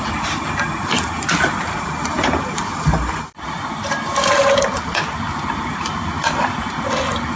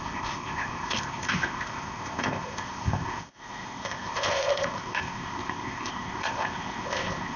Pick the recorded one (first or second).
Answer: first